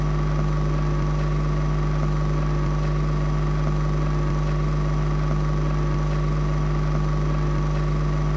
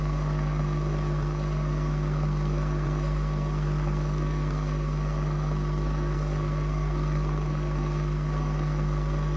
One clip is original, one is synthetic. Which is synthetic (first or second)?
second